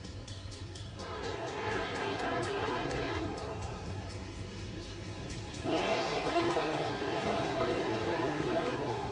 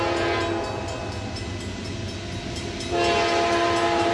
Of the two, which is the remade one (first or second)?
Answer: first